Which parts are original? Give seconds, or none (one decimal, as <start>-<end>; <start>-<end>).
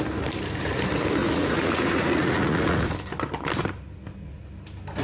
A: 0.0-1.2; 2.9-5.0